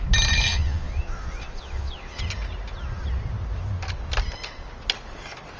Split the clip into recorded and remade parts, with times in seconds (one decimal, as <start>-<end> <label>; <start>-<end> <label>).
0.0-0.5 recorded; 0.5-2.2 remade; 2.2-5.6 recorded